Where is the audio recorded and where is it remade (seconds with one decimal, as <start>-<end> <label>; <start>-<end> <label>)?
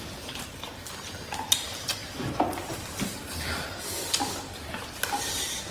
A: 0.0-5.7 recorded